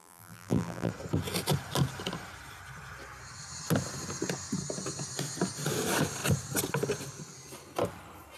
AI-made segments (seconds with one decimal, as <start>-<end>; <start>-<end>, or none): 0.0-0.9